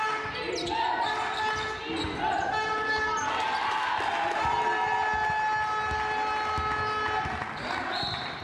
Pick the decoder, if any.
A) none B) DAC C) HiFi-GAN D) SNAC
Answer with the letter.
A